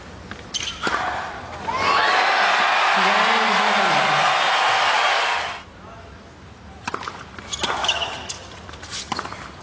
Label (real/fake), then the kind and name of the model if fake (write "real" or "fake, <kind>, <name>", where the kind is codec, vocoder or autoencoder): real